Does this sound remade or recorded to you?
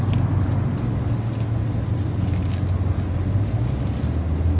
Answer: recorded